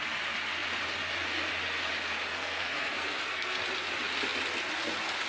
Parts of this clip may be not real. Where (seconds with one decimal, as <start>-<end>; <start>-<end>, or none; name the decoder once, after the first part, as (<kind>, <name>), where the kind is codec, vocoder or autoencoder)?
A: 2.3-3.6 (codec, SNAC)